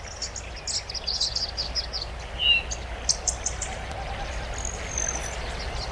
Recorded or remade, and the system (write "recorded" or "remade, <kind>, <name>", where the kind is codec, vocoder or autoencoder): recorded